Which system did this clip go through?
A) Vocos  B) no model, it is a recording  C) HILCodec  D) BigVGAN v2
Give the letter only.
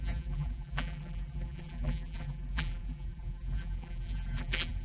D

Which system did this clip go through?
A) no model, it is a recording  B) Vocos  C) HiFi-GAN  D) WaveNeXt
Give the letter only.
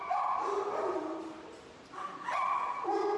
A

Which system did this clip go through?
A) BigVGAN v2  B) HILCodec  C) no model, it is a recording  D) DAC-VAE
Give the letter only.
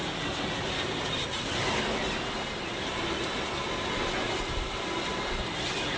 A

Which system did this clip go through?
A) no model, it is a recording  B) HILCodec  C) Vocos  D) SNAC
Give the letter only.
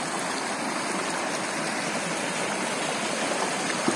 A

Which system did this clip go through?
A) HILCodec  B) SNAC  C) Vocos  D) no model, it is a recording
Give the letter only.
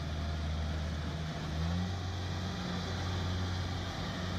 D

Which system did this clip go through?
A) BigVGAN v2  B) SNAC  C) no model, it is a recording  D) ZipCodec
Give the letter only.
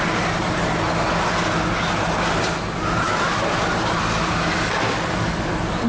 C